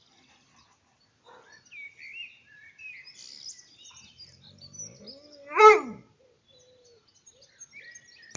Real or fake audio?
real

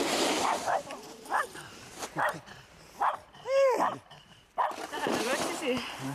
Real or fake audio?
fake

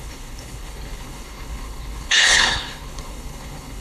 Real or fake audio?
fake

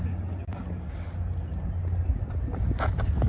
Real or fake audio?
real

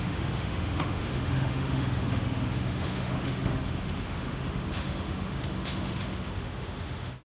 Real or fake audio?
fake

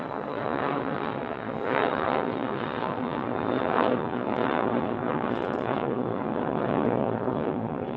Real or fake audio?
fake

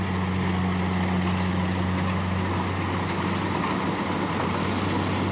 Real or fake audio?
real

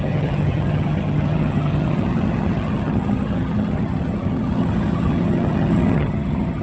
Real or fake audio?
fake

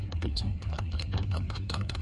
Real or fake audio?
fake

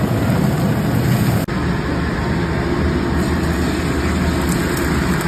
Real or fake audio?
real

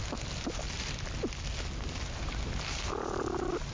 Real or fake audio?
real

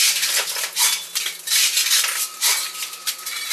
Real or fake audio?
real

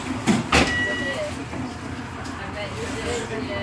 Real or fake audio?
real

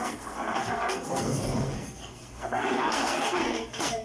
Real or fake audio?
fake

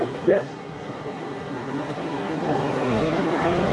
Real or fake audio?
fake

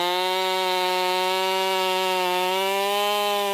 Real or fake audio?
fake